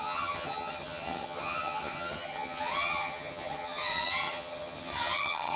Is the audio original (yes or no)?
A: no